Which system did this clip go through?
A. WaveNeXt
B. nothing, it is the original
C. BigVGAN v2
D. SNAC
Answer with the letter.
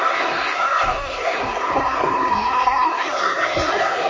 D